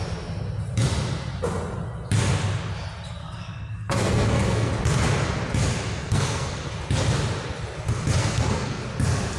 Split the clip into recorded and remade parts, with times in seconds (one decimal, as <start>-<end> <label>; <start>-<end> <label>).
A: 0.0-3.2 recorded; 3.2-4.7 remade; 4.7-6.0 recorded; 6.0-6.7 remade; 6.7-8.2 recorded; 8.2-8.8 remade; 8.8-9.4 recorded